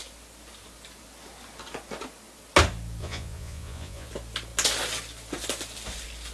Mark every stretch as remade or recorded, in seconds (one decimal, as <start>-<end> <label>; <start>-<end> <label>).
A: 0.0-3.0 recorded; 3.0-4.1 remade; 4.1-6.3 recorded